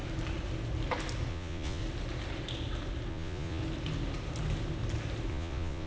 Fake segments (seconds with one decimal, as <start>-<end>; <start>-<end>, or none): 1.3-1.8; 3.1-3.6; 5.3-5.9